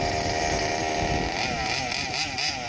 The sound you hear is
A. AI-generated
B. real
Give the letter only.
B